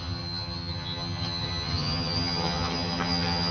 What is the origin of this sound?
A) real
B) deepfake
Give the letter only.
B